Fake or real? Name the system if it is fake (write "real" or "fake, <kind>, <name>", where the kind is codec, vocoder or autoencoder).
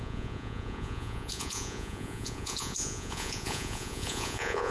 fake, vocoder, Vocos